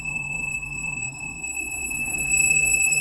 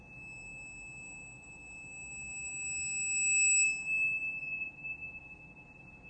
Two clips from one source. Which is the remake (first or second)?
first